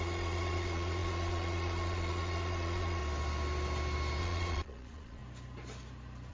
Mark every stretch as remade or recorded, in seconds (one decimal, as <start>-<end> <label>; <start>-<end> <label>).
0.0-3.0 remade; 3.0-4.2 recorded; 4.2-5.2 remade; 5.2-6.3 recorded